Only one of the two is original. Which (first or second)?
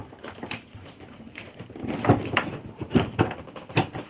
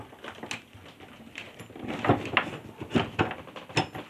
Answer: second